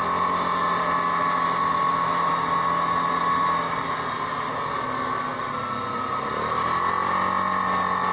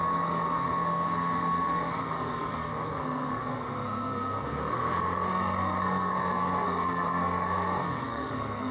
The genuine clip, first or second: first